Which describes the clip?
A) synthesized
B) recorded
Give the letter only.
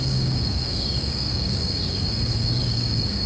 A